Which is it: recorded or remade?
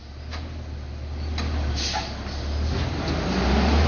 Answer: recorded